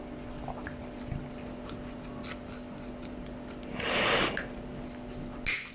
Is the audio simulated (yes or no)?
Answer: no